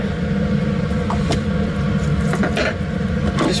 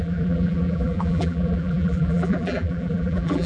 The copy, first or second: second